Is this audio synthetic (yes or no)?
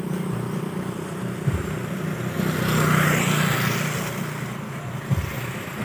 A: no